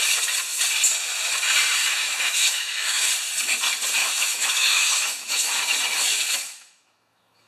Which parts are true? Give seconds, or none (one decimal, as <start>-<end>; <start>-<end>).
0.0-1.8; 3.1-4.0; 5.5-6.1